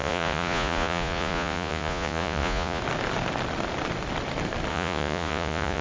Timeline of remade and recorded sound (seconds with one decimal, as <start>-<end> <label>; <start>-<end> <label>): 0.0-2.8 remade; 2.8-4.7 recorded; 4.7-5.8 remade